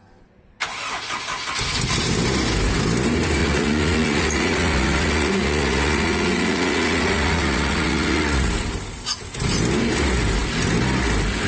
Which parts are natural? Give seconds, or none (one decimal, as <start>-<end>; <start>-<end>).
0.0-3.4; 8.5-11.5